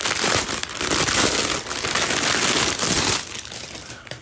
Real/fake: real